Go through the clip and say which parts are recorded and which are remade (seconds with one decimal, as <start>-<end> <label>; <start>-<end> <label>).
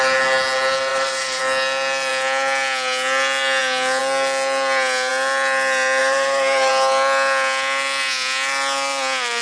0.0-0.9 recorded; 0.9-1.4 remade; 1.4-6.0 recorded; 6.0-6.7 remade; 6.7-9.4 recorded